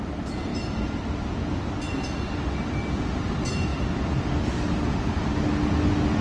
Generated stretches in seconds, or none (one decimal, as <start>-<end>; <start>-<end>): 0.5-1.4; 3.7-4.3